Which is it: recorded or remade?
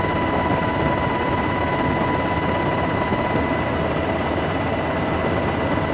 recorded